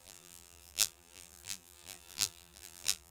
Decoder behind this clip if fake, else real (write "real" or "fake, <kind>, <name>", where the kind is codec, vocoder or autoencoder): fake, vocoder, BigVGAN v2